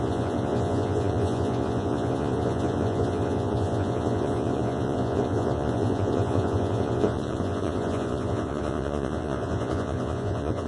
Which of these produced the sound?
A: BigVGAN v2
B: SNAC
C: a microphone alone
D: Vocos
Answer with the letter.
D